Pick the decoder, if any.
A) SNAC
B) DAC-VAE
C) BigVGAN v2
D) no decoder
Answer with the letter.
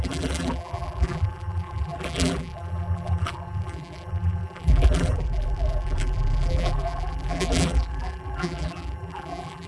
C